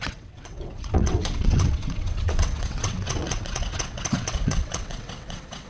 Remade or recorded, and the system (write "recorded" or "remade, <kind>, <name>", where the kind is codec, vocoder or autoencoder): remade, vocoder, WaveNeXt